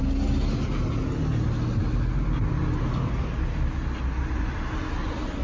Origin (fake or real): real